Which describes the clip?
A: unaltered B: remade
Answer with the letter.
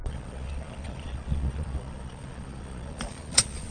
B